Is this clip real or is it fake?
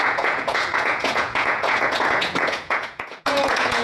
fake